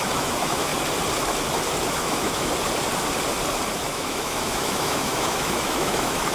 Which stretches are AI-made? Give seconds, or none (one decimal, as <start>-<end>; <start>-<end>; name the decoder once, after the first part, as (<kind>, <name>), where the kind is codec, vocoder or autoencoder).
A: 0.0-0.7 (autoencoder, DAC-VAE); 1.9-2.5; 3.8-6.3